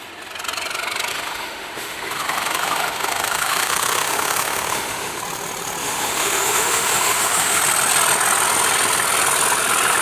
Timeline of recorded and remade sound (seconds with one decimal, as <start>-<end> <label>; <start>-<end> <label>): 0.0-1.1 recorded; 1.1-5.2 remade; 5.2-5.8 recorded; 5.8-7.6 remade; 7.6-10.0 recorded